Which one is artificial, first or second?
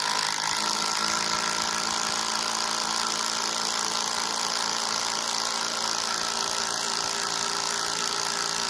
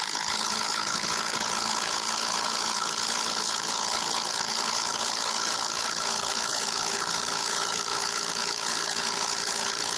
second